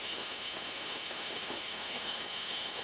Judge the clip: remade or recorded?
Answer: remade